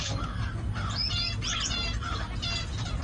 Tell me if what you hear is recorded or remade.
recorded